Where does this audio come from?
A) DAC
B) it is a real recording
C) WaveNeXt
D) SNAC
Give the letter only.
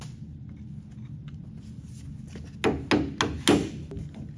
B